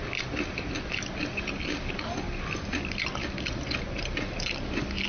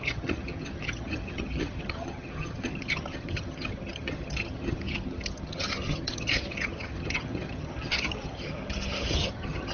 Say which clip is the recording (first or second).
first